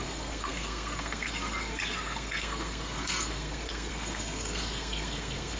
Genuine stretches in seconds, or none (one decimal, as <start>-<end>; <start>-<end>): none